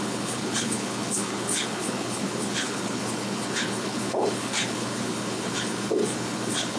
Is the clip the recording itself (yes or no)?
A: no